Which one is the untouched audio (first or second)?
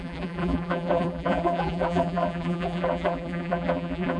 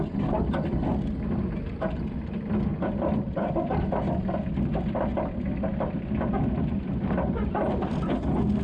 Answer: second